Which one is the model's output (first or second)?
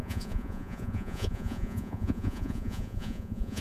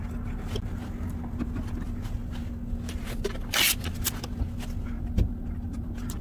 first